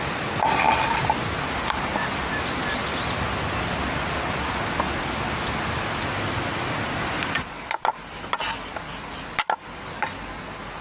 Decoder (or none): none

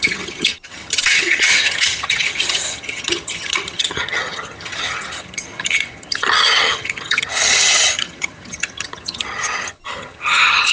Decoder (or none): vocoder, HiFi-GAN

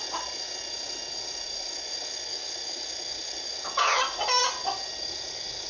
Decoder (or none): none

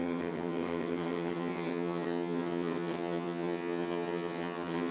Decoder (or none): vocoder, HiFi-GAN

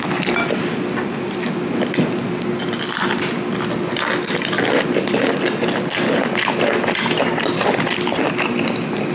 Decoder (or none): none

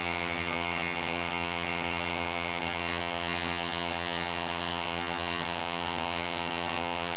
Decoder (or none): vocoder, HiFi-GAN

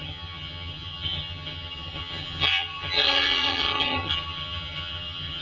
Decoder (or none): vocoder, HiFi-GAN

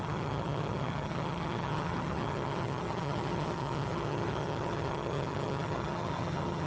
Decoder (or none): vocoder, HiFi-GAN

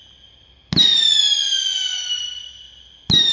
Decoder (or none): none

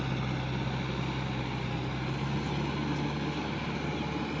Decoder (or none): none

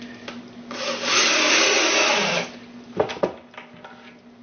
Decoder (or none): none